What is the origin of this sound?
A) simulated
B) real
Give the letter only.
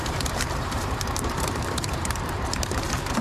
A